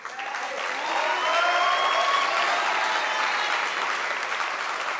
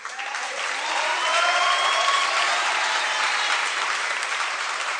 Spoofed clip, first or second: second